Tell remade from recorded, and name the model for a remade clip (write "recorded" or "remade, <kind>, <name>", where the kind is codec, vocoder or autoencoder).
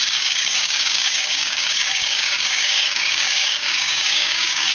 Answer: remade, codec, DAC